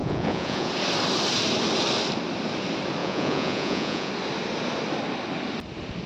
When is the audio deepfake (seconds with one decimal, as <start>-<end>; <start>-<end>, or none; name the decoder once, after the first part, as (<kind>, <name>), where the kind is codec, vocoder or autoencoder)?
0.0-0.7 (vocoder, Vocos); 3.0-4.1